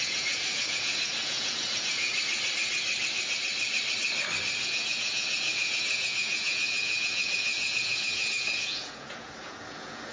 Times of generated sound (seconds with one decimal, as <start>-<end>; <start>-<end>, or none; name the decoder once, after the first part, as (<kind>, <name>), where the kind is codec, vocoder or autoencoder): 0.0-2.1 (vocoder, Vocos); 4.6-10.1